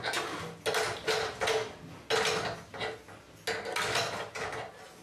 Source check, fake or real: real